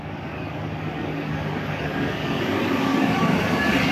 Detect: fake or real fake